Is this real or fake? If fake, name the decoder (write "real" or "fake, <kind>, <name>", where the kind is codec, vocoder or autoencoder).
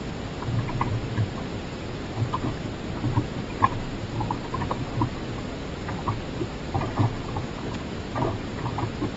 real